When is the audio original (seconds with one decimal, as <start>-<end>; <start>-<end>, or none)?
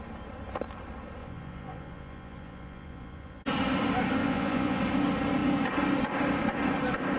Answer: 0.0-1.2; 3.4-4.2; 4.8-7.2